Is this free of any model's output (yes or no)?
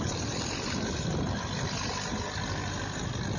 yes